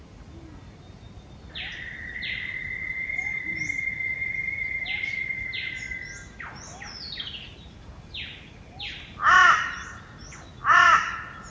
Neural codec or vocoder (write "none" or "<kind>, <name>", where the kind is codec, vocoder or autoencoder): none